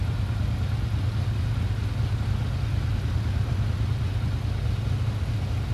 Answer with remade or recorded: recorded